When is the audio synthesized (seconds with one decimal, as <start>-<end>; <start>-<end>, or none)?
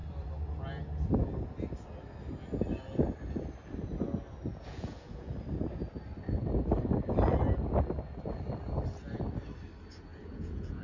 4.5-5.3; 10.1-10.8